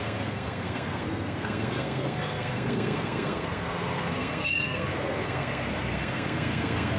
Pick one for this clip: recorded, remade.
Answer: remade